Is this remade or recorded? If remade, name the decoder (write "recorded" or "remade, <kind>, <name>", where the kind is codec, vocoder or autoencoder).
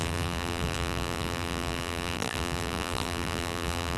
remade, vocoder, BigVGAN v2